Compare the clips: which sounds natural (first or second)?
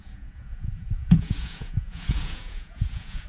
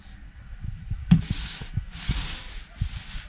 second